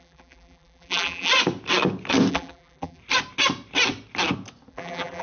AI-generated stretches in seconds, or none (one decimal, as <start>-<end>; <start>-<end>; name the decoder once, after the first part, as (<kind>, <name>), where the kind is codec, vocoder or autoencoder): 0.0-1.3 (vocoder, BigVGAN v2); 2.3-3.0; 4.7-5.2